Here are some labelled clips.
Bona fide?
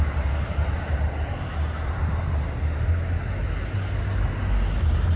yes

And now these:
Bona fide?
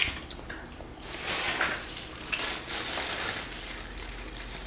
yes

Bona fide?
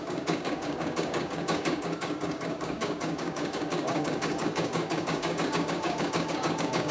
no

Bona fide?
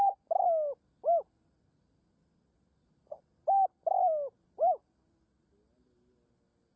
yes